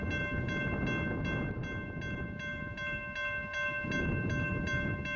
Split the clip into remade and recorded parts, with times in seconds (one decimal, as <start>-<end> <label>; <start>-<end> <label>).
0.0-5.2 recorded